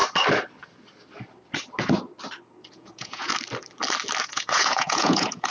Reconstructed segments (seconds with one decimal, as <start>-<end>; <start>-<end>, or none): 2.7-3.3; 4.2-5.5